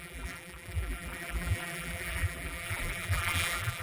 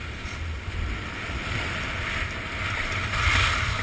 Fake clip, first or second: first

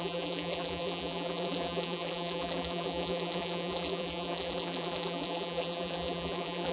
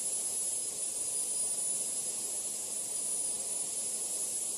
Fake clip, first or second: first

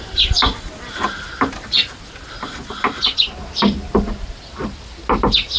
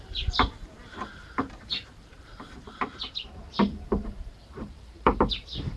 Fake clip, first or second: second